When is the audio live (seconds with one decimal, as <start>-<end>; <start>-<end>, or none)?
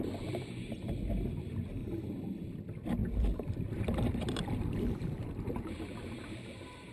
0.0-1.8; 2.6-3.0; 5.3-6.9